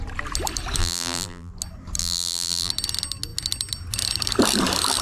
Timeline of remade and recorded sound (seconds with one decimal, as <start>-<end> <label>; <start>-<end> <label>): 0.0-0.8 recorded; 0.8-1.5 remade; 1.5-2.0 recorded; 2.0-2.7 remade; 2.7-5.0 recorded

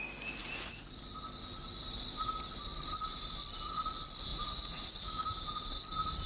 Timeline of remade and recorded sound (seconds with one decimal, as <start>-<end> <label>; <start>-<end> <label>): 0.0-0.4 recorded; 0.4-1.0 remade; 1.0-4.3 recorded; 4.3-5.1 remade; 5.1-6.3 recorded

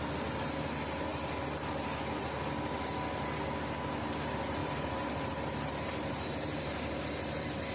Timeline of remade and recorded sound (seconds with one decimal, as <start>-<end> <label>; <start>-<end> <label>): 0.0-4.6 recorded; 4.6-7.0 remade; 7.0-7.7 recorded

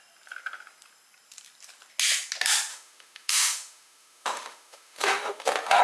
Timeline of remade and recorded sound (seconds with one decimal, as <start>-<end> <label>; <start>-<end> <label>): 0.0-2.7 recorded; 2.7-5.8 remade

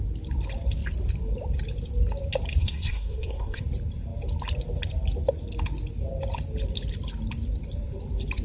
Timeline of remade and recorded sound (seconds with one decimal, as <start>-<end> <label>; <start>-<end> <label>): 0.0-2.6 recorded; 2.6-3.6 remade; 3.6-8.4 recorded

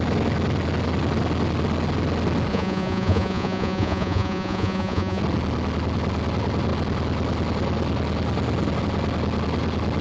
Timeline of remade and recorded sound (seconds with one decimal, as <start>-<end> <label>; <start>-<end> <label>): 0.0-2.5 recorded; 2.5-5.2 remade; 5.2-10.0 recorded

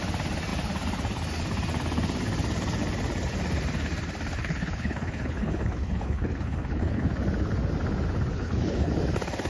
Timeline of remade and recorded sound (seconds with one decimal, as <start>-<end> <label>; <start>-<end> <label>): 0.0-4.3 recorded; 4.3-7.1 remade; 7.1-8.3 recorded; 8.3-8.9 remade; 8.9-9.5 recorded